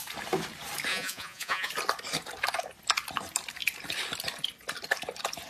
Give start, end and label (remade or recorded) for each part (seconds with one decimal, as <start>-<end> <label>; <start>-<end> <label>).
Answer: 0.0-0.9 recorded; 0.9-1.7 remade; 1.7-5.5 recorded